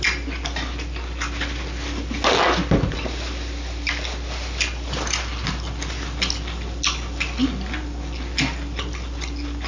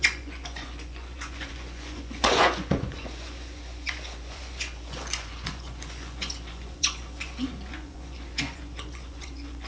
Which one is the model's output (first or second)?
second